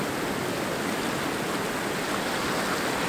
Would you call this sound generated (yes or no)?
no